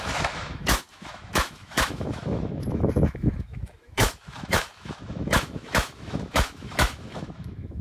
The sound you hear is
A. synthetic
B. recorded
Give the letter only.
A